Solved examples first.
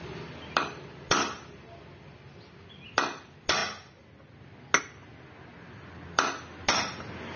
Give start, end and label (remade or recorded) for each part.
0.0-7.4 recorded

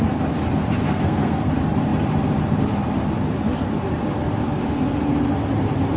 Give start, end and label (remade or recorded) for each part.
0.0-0.8 recorded; 0.8-1.5 remade; 1.5-6.0 recorded